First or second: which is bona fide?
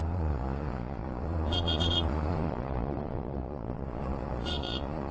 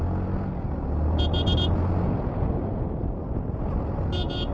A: second